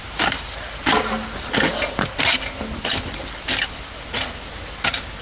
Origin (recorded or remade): recorded